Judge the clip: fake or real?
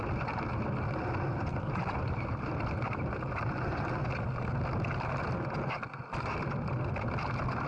real